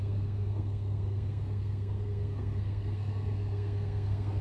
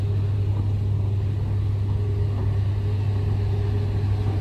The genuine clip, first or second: second